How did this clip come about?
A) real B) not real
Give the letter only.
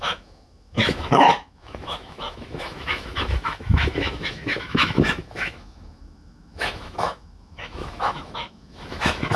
B